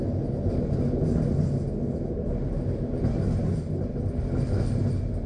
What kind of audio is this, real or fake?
real